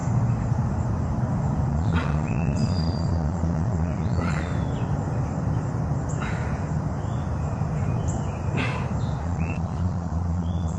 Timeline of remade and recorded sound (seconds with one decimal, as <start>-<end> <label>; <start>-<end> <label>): 0.0-1.7 recorded; 1.7-4.5 remade; 4.5-9.2 recorded; 9.2-10.8 remade